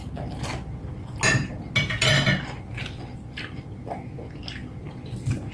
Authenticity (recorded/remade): recorded